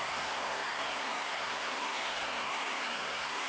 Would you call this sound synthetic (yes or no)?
yes